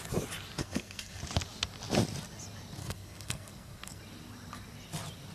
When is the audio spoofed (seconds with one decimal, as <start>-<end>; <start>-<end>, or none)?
0.6-1.2; 2.8-4.0